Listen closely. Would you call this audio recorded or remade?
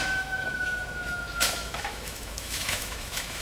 remade